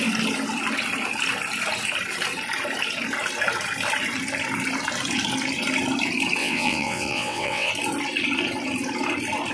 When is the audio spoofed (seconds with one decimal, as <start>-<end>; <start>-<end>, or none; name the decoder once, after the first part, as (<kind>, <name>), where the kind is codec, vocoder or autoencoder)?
6.4-7.7 (vocoder, WaveNeXt)